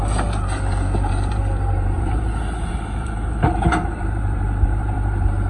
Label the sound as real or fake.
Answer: fake